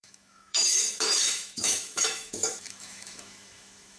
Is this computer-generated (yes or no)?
yes